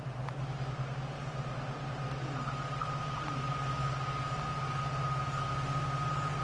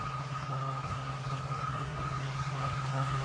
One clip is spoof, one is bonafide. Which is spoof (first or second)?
second